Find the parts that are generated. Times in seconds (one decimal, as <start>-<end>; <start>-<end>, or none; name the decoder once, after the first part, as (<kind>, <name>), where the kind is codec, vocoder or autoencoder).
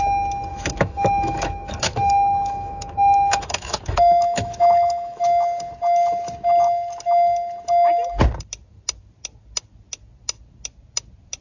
0.5-5.2 (autoencoder, DAC-VAE)